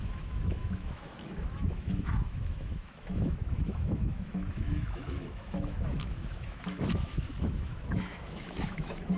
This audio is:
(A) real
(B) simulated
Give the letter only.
B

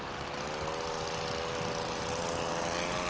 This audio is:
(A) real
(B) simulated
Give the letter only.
A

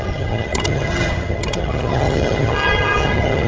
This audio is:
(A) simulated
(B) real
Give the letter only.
A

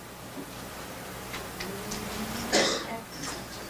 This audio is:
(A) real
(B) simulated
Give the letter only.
A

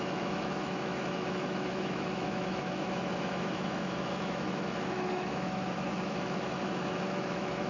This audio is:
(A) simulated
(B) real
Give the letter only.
A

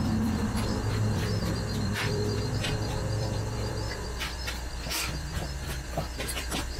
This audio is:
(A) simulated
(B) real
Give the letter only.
A